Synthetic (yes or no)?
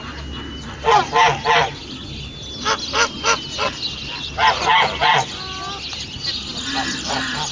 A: no